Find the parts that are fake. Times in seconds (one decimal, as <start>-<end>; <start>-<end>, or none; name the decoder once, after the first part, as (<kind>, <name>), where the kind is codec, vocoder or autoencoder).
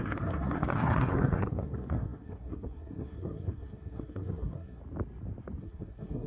0.0-4.8 (codec, SNAC); 5.6-6.3